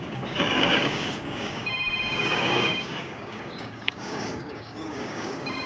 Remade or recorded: remade